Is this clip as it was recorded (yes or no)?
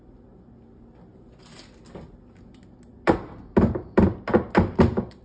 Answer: yes